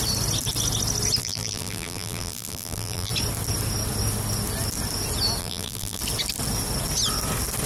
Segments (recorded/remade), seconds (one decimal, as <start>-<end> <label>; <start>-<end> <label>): 0.0-1.2 recorded; 1.2-3.1 remade; 3.1-5.4 recorded; 5.4-6.0 remade; 6.0-7.7 recorded